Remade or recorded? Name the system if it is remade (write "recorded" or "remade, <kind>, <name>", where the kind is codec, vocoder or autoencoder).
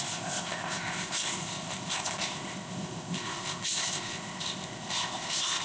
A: remade, codec, ZipCodec